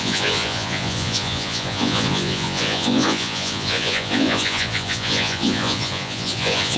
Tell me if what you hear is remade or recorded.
remade